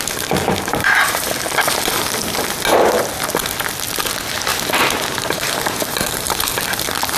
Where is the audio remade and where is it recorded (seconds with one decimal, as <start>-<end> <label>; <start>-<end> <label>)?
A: 0.0-0.7 recorded; 0.7-1.3 remade; 1.3-4.5 recorded; 4.5-7.2 remade